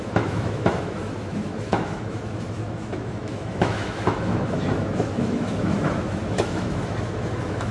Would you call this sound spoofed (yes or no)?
yes